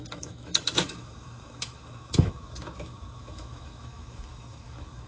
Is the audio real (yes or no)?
no